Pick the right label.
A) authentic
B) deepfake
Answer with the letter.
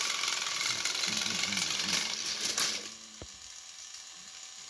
A